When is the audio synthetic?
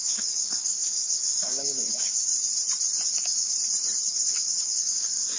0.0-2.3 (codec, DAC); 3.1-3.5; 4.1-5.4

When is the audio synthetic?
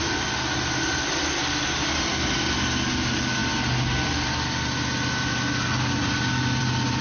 none